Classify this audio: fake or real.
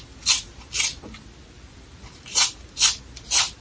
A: real